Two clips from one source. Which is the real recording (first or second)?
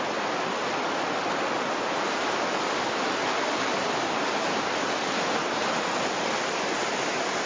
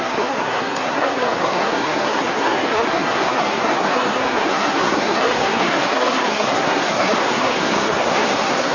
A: first